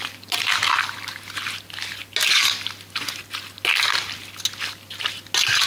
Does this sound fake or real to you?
real